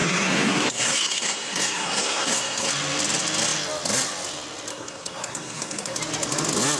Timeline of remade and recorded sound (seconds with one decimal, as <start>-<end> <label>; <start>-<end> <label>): 0.0-2.7 remade; 2.7-4.7 recorded; 4.7-6.0 remade; 6.0-6.8 recorded